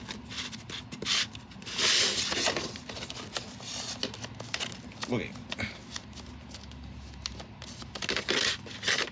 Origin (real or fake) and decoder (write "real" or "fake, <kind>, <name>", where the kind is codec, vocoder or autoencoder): real